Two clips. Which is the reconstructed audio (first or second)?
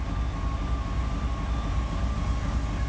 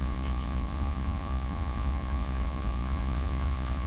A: second